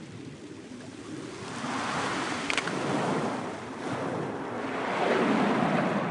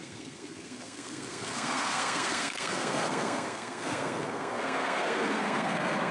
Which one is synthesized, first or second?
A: second